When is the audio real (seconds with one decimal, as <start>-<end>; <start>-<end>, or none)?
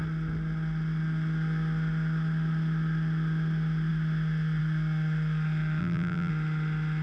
0.0-5.8; 6.3-7.0